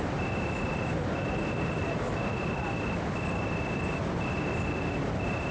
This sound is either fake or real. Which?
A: real